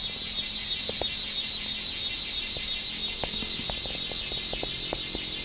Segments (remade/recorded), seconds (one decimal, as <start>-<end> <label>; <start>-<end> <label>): 0.0-5.4 recorded